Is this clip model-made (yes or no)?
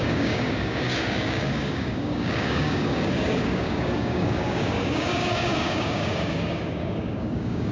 yes